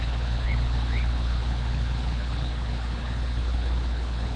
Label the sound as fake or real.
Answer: fake